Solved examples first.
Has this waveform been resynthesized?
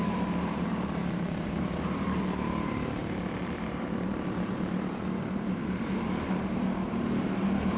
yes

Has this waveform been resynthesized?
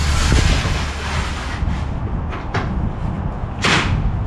no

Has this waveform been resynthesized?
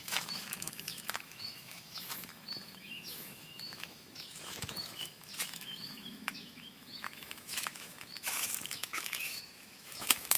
yes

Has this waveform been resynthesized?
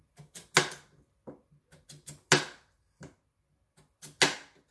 no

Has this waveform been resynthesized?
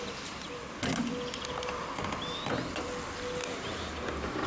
no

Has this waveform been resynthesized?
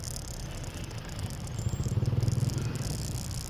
no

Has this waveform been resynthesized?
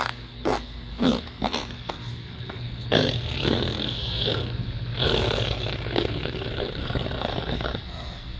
yes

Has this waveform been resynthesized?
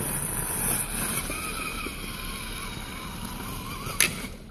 no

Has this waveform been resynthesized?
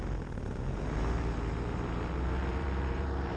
yes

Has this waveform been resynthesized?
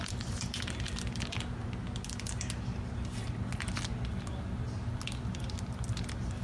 no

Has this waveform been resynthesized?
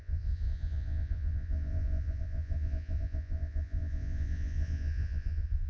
yes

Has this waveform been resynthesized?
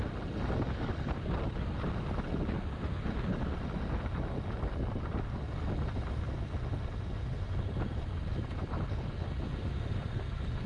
no